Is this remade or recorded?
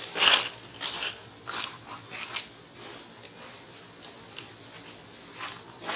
recorded